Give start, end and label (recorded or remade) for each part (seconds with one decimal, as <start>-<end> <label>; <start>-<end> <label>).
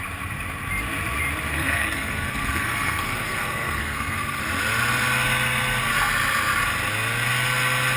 0.0-1.5 recorded; 1.5-4.4 remade; 4.4-8.0 recorded